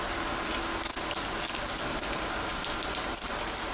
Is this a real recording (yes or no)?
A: yes